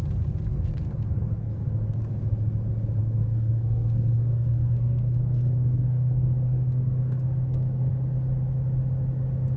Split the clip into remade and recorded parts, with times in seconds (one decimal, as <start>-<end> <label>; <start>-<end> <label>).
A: 0.0-0.5 recorded; 0.5-2.0 remade; 2.0-3.0 recorded; 3.0-7.9 remade; 7.9-9.6 recorded